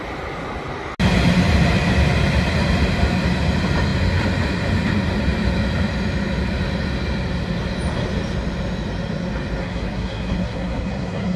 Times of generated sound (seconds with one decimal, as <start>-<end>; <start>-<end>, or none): 9.6-11.4